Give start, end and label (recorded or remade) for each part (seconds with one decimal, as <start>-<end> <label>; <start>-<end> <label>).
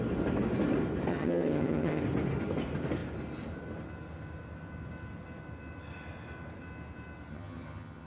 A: 0.0-1.1 recorded; 1.1-2.0 remade; 2.0-7.3 recorded; 7.3-8.1 remade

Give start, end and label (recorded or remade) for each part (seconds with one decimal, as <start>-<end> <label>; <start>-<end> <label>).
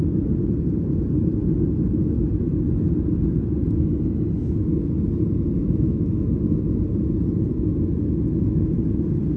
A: 0.0-4.4 recorded; 4.4-4.9 remade; 4.9-5.6 recorded; 5.6-6.3 remade; 6.3-9.4 recorded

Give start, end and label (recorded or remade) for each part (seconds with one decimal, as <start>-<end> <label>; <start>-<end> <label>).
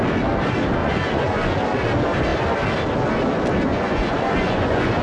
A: 0.0-0.8 recorded; 0.8-1.6 remade; 1.6-3.7 recorded; 3.7-5.0 remade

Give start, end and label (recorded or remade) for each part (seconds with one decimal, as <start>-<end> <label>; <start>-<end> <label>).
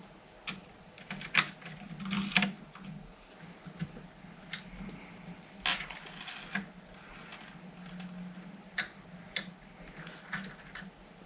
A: 0.0-11.3 recorded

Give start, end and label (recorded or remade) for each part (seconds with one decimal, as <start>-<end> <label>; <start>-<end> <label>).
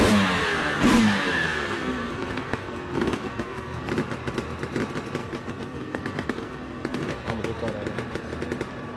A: 0.0-0.4 recorded; 0.4-3.9 remade; 3.9-5.2 recorded; 5.2-7.4 remade; 7.4-9.0 recorded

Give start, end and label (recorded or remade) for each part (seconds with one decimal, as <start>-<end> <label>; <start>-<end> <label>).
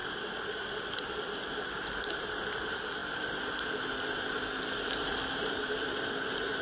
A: 0.0-1.0 recorded; 1.0-3.0 remade; 3.0-4.8 recorded; 4.8-6.6 remade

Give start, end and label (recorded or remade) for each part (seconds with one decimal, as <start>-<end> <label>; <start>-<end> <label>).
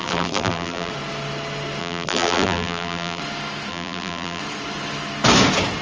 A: 0.0-0.9 remade; 0.9-1.8 recorded; 1.8-3.2 remade; 3.2-3.7 recorded; 3.7-4.4 remade; 4.4-5.8 recorded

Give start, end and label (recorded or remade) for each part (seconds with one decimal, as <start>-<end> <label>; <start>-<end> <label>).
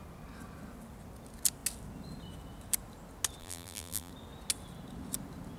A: 0.0-3.4 recorded; 3.4-4.1 remade; 4.1-5.6 recorded